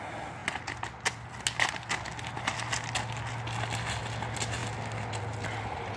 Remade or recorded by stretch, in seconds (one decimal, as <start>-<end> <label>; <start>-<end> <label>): 0.0-6.0 recorded